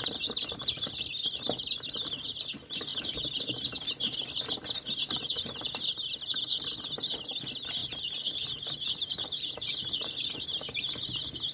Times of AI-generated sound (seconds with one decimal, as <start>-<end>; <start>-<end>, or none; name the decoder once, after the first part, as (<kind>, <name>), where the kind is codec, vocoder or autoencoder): 7.8-10.3 (vocoder, BigVGAN v2)